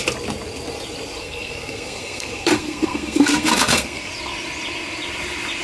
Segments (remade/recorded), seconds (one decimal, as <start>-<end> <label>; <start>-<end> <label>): 0.0-1.2 recorded; 1.2-4.1 remade; 4.1-5.6 recorded